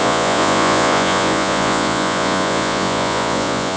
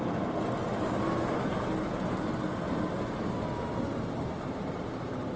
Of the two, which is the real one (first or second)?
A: second